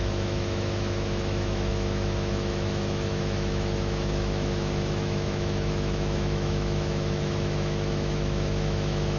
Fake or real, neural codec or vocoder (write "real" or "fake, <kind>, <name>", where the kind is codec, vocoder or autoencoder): fake, autoencoder, DAC-VAE